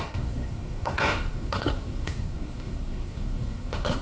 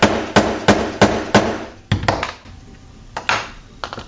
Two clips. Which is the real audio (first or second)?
second